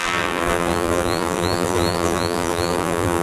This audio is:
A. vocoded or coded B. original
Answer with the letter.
A